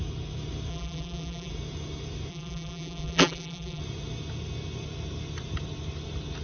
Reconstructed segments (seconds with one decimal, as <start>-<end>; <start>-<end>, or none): 0.7-1.5; 2.3-3.8